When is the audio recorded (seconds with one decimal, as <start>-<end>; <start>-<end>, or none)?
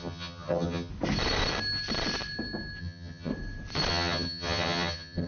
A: 0.9-2.8; 3.3-3.9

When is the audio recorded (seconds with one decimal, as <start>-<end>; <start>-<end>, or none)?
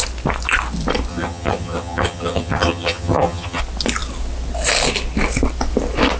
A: 0.0-1.1; 3.6-6.2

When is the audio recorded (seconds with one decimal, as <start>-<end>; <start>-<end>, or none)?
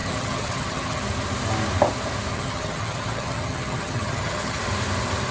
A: 1.0-2.3; 4.6-5.3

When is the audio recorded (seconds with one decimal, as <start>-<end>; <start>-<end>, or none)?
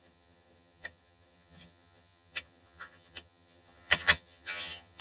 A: none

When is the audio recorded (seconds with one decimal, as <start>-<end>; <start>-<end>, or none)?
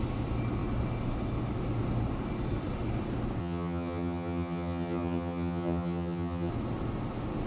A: 0.0-3.4; 6.5-7.5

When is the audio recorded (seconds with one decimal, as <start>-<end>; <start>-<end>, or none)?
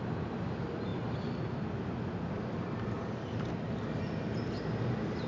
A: 0.0-5.3